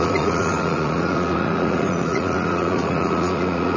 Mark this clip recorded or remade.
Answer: remade